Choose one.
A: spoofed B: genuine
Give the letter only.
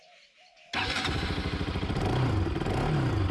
B